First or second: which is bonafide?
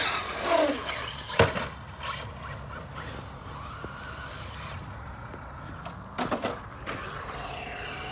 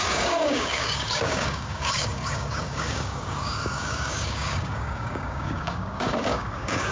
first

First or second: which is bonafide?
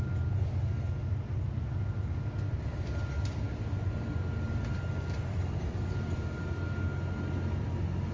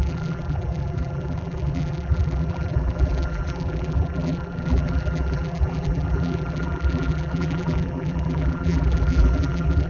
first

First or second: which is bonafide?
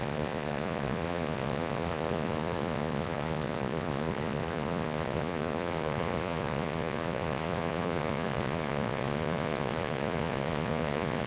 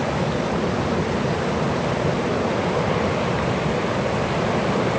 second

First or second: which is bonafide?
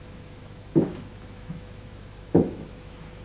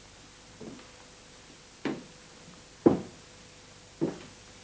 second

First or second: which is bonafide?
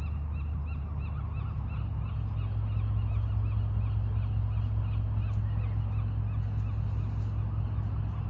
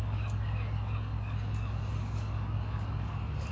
first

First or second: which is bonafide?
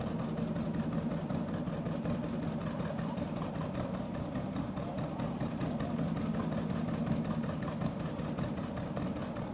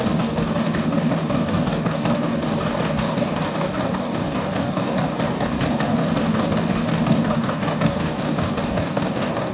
first